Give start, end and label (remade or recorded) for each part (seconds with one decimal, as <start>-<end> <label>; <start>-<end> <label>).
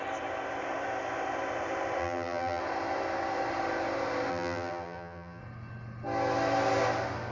0.0-2.0 recorded; 2.0-2.6 remade; 2.6-4.3 recorded; 4.3-5.4 remade; 5.4-7.3 recorded